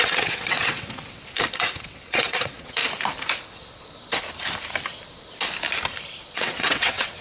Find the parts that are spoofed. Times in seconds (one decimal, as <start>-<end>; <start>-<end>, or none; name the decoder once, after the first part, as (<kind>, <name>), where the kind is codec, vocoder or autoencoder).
0.0-1.2 (vocoder, WaveNeXt); 1.8-2.8; 6.3-7.2